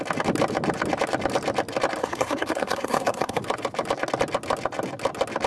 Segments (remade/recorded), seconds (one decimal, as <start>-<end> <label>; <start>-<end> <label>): 0.0-2.0 recorded; 2.0-3.4 remade; 3.4-5.5 recorded

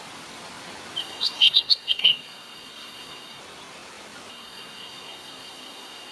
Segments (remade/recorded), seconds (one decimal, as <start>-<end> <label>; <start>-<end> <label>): 0.0-1.0 recorded; 1.0-3.4 remade; 3.4-4.3 recorded; 4.3-6.1 remade

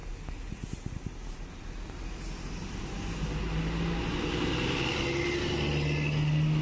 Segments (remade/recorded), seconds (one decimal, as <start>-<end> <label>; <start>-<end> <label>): 0.0-6.6 recorded